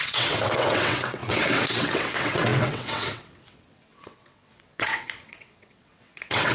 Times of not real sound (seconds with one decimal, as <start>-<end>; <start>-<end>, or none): 0.0-6.5

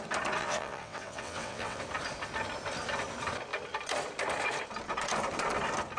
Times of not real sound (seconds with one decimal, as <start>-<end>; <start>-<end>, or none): 0.4-1.8

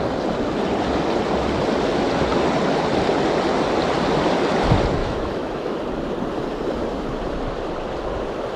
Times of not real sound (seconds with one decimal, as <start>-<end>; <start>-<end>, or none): 5.0-5.8

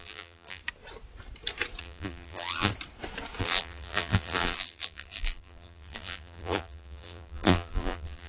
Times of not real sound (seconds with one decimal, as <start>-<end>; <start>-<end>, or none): 0.0-0.6; 1.8-2.7; 3.4-8.3

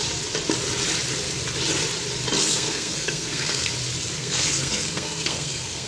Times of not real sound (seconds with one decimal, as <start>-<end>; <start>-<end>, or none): 2.4-3.7; 4.2-5.9

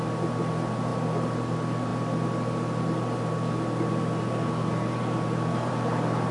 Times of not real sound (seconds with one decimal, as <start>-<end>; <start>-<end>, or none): none

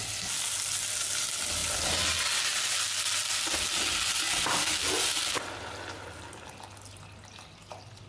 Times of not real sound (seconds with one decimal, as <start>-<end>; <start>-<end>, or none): none

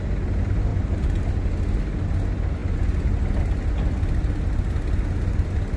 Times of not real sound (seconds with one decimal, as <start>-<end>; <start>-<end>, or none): 0.7-1.2